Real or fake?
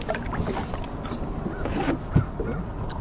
real